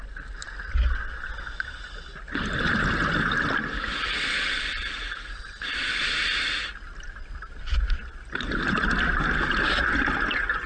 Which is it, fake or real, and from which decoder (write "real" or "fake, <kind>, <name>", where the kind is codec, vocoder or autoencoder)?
real